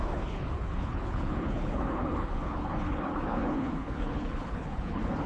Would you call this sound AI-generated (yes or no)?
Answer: yes